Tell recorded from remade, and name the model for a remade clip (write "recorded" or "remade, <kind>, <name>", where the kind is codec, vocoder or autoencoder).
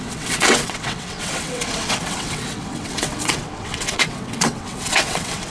remade, vocoder, WaveNeXt